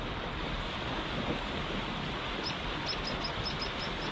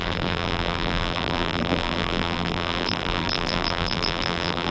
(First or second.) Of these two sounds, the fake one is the second